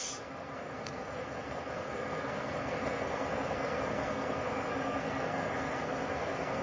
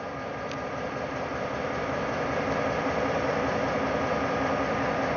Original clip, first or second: second